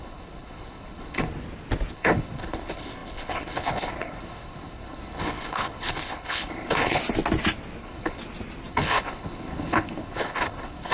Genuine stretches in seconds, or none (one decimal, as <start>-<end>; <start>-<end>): 1.3-1.9; 7.0-7.8; 8.2-8.7